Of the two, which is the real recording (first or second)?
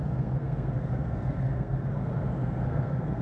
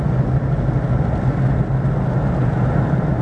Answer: second